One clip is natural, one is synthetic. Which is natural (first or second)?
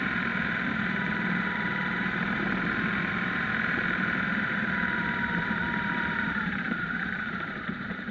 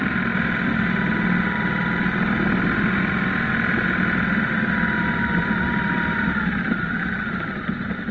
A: second